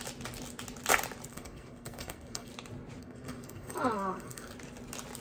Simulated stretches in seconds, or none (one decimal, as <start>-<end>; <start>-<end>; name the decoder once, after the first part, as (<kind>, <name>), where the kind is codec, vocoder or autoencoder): 1.3-2.5 (codec, SNAC); 3.0-4.5